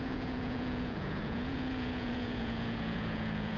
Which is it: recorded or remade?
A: remade